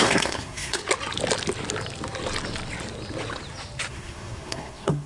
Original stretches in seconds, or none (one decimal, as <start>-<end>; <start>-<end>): 0.8-3.9